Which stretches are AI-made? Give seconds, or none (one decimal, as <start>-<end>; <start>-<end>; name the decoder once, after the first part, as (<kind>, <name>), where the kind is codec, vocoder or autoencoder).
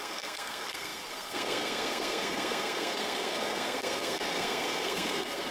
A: 0.0-5.5 (codec, SNAC)